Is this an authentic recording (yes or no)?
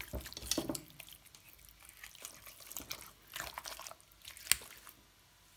yes